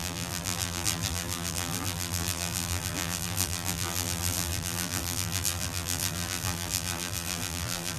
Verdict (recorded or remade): remade